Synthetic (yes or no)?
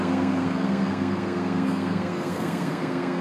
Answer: yes